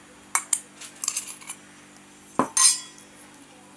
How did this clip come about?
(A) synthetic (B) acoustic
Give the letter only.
B